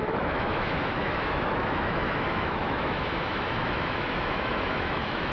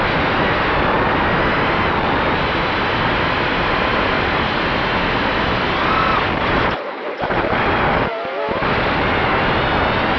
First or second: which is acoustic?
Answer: second